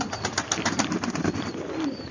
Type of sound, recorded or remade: remade